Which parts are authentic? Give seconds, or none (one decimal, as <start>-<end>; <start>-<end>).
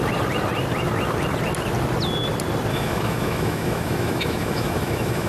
0.0-2.7